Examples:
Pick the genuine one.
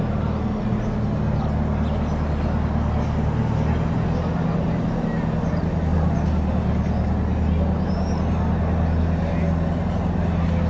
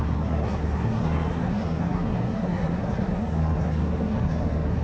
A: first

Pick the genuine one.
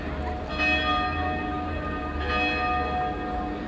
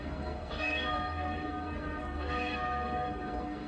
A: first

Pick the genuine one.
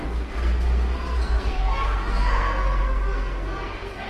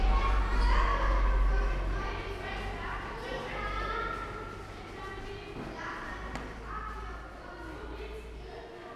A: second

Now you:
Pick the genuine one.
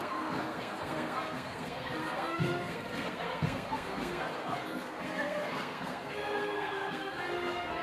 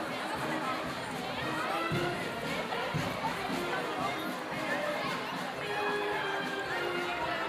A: second